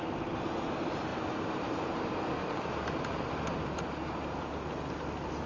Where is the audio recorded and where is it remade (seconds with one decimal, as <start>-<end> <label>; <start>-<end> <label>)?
0.0-2.4 recorded; 2.4-3.3 remade; 3.3-5.5 recorded

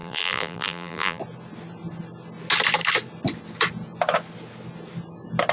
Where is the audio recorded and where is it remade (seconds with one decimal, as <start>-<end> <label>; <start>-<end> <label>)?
0.0-1.2 remade; 1.2-5.5 recorded

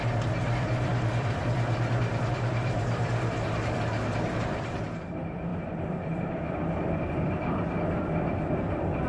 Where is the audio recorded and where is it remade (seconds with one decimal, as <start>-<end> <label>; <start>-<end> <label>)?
0.0-9.1 remade

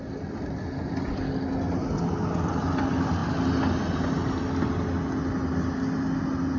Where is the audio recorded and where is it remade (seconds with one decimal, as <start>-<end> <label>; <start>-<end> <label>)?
0.0-6.6 recorded

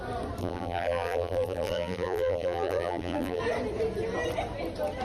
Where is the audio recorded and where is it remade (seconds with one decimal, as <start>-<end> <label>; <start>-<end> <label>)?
0.0-0.4 recorded; 0.4-3.4 remade; 3.4-5.0 recorded